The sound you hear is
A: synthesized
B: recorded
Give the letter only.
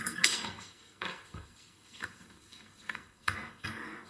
A